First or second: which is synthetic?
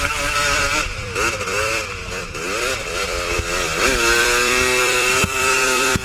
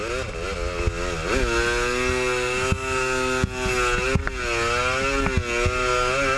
first